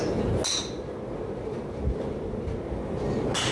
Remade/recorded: recorded